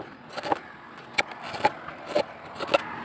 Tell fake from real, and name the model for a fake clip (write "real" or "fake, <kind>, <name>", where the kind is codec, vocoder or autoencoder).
real